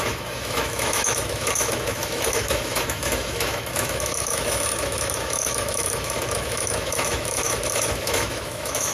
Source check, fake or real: fake